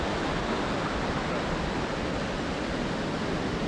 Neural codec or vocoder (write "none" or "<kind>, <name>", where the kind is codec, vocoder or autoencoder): none